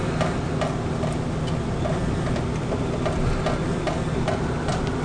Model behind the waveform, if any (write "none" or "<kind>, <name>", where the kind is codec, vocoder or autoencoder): none